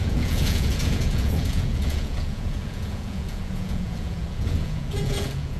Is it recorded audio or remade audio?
remade